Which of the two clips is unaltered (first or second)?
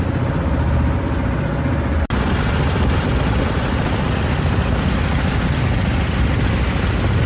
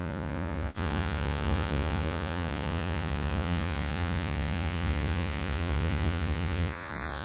first